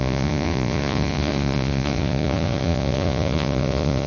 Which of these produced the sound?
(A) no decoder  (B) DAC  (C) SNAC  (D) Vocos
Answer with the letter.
D